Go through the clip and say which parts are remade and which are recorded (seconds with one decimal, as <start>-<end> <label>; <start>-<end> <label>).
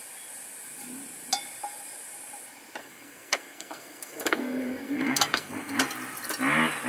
0.0-2.8 recorded; 2.8-5.8 remade; 5.8-6.9 recorded